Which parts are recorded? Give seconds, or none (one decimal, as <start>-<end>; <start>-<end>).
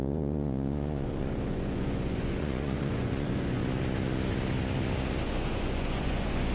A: 3.6-5.2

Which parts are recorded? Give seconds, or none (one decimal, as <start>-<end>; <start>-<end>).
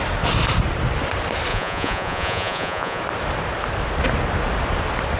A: 0.0-1.5; 3.0-5.2